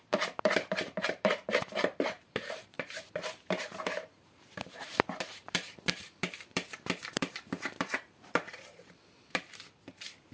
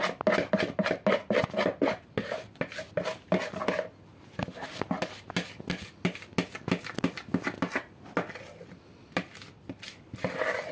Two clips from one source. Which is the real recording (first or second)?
second